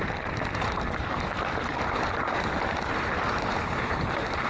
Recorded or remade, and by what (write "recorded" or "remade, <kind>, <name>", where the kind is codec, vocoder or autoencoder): remade, vocoder, BigVGAN v2